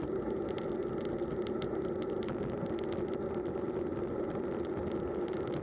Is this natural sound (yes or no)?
yes